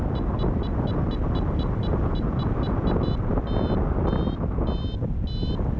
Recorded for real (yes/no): yes